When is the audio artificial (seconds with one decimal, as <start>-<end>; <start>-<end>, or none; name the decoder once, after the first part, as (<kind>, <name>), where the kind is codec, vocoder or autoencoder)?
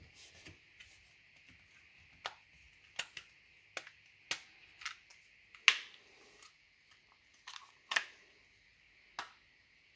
none